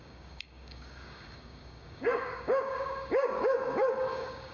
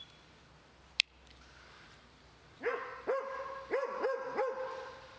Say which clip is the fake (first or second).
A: first